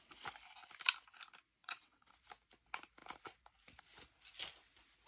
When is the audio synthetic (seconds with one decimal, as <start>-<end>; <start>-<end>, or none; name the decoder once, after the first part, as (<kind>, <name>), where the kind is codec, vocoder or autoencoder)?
1.6-2.1 (vocoder, WaveNeXt)